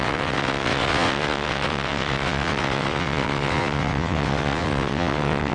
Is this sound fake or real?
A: fake